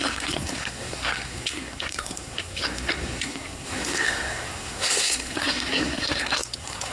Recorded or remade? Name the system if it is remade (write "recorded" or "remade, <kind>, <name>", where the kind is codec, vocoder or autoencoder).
remade, codec, SNAC